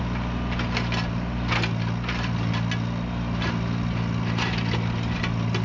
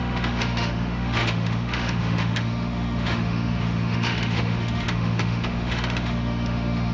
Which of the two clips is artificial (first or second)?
second